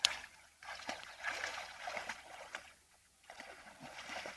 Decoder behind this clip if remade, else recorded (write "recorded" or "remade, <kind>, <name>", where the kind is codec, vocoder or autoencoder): remade, vocoder, Vocos